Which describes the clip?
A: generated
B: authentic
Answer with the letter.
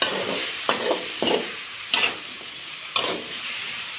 A